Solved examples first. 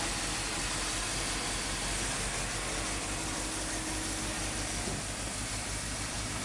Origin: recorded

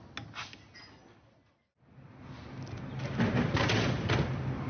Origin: recorded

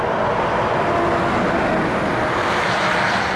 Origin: recorded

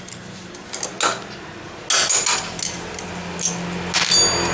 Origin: recorded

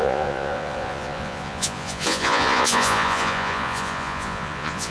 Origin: remade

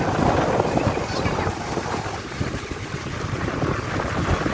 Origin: recorded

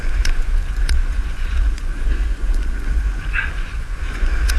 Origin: remade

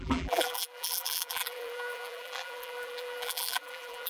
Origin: remade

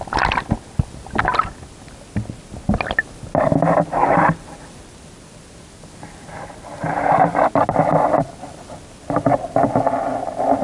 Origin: recorded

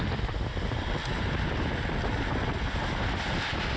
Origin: recorded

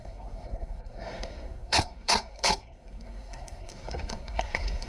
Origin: remade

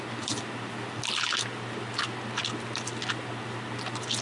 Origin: recorded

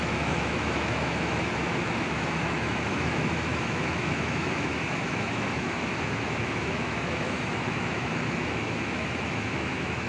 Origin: remade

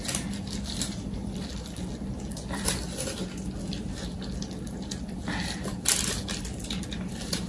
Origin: recorded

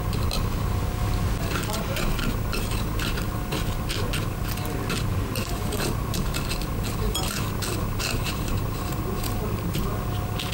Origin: recorded